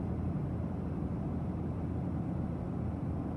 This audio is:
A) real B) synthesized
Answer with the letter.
A